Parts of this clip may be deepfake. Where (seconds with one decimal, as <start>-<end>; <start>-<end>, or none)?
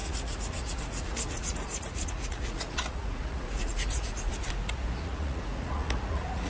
0.0-4.3; 5.0-6.5